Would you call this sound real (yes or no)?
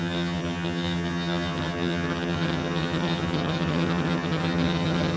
no